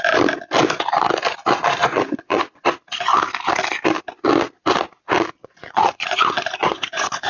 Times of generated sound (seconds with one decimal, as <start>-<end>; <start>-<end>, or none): 1.8-2.6; 5.4-7.3